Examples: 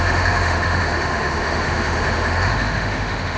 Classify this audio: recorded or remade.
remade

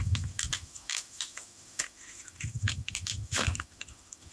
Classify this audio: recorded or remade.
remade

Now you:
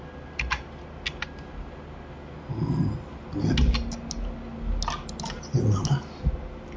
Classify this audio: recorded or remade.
recorded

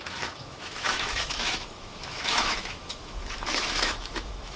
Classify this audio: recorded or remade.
remade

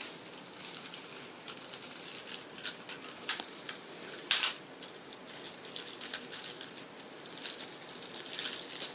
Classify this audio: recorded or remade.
recorded